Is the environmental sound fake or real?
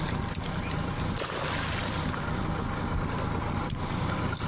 real